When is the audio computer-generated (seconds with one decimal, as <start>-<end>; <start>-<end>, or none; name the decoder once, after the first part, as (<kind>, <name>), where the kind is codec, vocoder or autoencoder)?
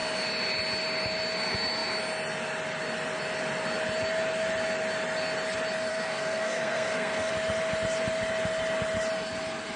5.9-7.3 (codec, SNAC)